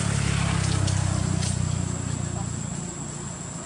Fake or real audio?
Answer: real